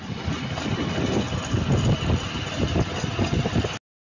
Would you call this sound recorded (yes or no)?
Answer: yes